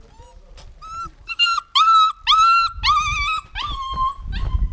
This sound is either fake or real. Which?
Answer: real